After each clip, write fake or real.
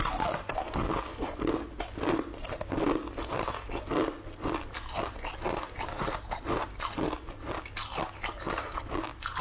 real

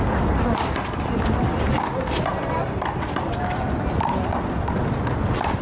real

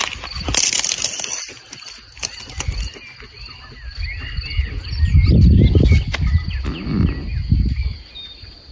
real